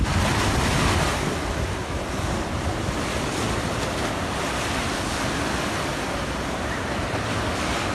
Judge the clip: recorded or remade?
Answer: recorded